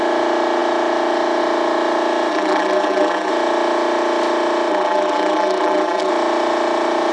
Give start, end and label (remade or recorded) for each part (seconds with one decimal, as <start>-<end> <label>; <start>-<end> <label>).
0.0-2.3 recorded; 2.3-3.3 remade; 3.3-4.7 recorded; 4.7-6.1 remade; 6.1-7.1 recorded